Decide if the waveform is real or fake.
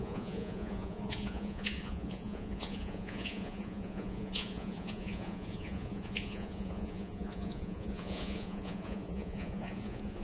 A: fake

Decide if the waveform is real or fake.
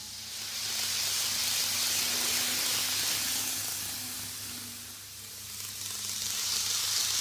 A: real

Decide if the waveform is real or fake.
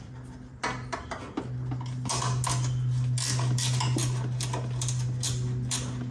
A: real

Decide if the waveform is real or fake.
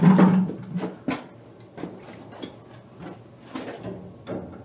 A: real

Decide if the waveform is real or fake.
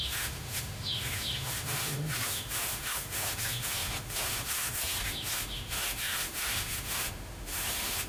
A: fake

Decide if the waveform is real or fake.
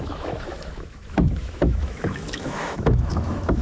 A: fake